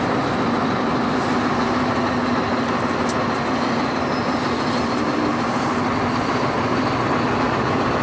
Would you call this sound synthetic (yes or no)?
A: no